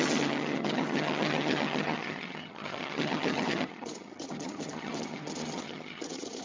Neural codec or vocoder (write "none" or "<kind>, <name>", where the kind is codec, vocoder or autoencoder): vocoder, HiFi-GAN